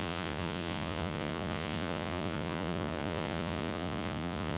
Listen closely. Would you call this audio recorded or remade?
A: remade